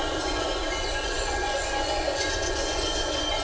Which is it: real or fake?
fake